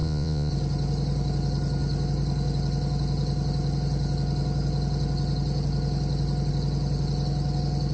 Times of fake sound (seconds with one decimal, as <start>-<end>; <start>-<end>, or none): 0.0-0.5